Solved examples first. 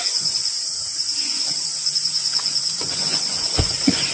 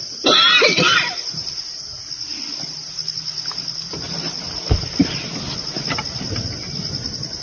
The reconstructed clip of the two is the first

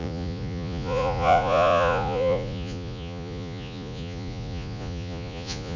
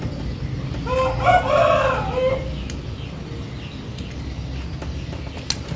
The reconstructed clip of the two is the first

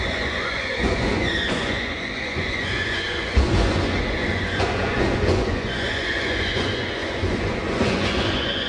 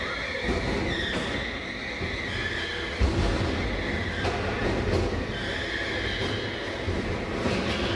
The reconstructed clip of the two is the first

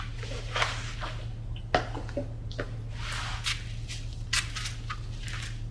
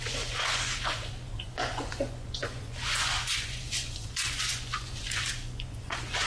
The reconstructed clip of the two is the second